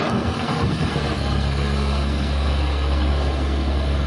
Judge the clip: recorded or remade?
remade